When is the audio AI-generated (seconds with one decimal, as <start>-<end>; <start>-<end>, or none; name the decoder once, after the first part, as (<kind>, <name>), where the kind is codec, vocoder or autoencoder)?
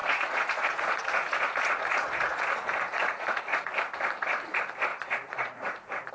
0.0-3.7 (vocoder, Vocos); 4.9-6.1